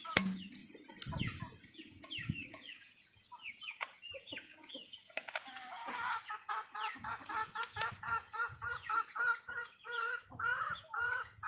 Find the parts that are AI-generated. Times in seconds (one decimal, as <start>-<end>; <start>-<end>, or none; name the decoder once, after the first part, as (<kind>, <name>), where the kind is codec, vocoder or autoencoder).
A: 0.0-0.6 (vocoder, Vocos); 1.2-11.5